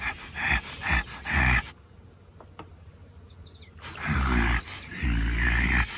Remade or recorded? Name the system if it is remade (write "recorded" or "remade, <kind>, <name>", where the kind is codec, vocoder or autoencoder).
recorded